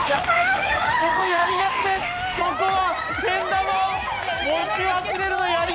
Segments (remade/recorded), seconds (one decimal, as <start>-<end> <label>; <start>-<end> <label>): 0.0-2.4 remade; 2.4-5.7 recorded